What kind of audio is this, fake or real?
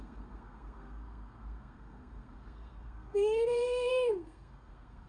fake